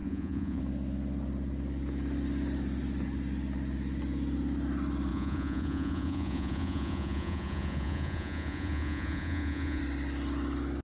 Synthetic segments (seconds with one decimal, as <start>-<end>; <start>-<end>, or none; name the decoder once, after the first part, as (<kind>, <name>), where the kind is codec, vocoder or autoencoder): 0.0-0.6 (vocoder, Vocos); 5.1-9.8